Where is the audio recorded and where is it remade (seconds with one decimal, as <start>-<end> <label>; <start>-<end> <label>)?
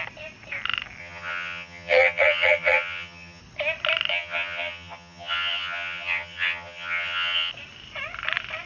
0.0-1.0 recorded; 1.0-3.4 remade; 3.4-4.1 recorded; 4.1-7.5 remade; 7.5-8.7 recorded